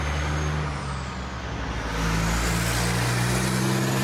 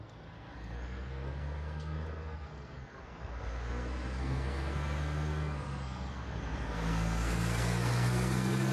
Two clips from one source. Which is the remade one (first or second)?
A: second